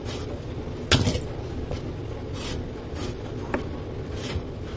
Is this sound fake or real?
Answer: real